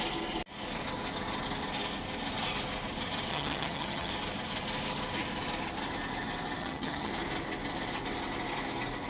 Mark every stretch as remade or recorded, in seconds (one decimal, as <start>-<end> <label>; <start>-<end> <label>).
0.0-3.3 recorded; 3.3-4.1 remade; 4.1-6.6 recorded; 6.6-7.1 remade; 7.1-9.1 recorded